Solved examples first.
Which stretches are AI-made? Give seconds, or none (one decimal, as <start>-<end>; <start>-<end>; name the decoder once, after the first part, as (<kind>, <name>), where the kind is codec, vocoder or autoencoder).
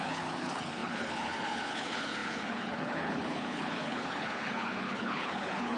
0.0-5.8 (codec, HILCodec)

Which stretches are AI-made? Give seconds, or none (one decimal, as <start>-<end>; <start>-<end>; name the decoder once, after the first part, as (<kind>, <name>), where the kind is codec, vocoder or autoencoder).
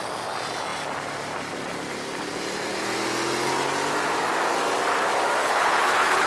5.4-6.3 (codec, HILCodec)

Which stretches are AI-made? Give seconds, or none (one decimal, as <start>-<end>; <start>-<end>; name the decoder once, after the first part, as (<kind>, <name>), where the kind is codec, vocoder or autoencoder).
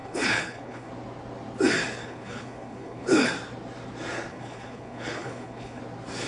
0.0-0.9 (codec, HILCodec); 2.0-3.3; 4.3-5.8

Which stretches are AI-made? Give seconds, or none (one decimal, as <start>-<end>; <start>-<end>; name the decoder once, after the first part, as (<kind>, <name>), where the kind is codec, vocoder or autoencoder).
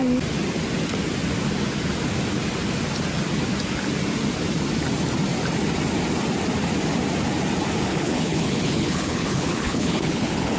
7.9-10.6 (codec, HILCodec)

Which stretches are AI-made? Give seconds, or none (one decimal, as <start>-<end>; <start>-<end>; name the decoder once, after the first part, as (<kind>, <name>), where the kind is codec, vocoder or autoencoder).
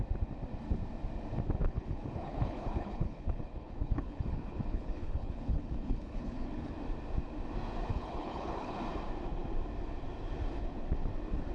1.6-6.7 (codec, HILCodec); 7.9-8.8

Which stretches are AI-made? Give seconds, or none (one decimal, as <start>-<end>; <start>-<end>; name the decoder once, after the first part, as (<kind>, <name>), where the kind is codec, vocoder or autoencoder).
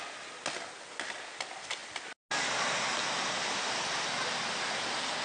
none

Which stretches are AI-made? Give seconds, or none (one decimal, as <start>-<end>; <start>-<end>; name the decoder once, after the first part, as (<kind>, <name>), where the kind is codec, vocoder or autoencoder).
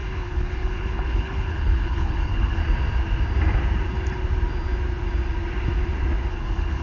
0.0-2.6 (codec, HILCodec); 6.3-6.8